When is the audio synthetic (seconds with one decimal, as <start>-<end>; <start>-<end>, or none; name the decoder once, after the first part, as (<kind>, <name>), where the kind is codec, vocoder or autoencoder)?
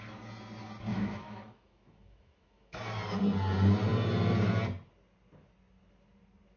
0.9-2.8 (autoencoder, DAC-VAE)